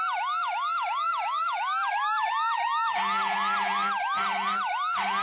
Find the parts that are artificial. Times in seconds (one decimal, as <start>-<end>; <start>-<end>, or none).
none